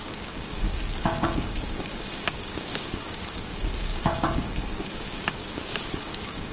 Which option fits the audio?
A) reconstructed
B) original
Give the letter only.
A